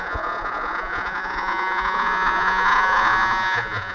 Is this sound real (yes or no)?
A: no